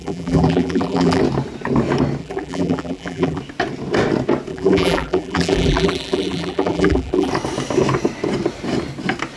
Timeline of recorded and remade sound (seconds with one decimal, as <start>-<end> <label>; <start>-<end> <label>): 0.0-1.2 remade; 1.2-2.2 recorded; 2.2-3.4 remade; 3.4-4.5 recorded; 4.5-7.3 remade; 7.3-9.4 recorded